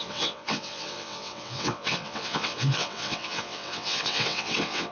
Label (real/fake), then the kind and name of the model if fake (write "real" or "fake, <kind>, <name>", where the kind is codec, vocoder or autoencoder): fake, vocoder, WaveNeXt